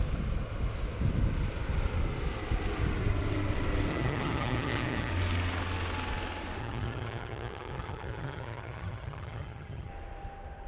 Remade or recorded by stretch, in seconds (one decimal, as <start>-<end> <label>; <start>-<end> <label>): 0.0-3.9 recorded; 3.9-5.1 remade; 5.1-6.6 recorded; 6.6-9.9 remade; 9.9-10.7 recorded